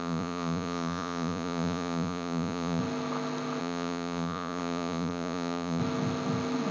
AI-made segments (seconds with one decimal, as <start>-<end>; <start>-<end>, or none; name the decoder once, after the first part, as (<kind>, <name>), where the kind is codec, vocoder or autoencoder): 0.0-2.8 (vocoder, Vocos); 3.6-5.8